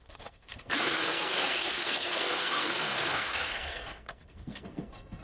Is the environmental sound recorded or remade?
remade